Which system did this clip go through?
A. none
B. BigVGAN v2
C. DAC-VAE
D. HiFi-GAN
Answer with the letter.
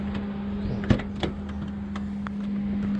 A